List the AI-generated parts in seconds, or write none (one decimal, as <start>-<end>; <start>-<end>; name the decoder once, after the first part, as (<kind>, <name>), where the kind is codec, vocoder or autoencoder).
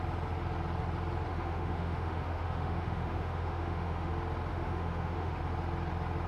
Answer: 1.3-4.1 (autoencoder, DAC-VAE); 4.5-5.4